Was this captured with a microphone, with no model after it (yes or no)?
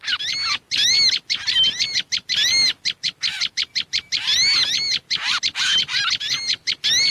yes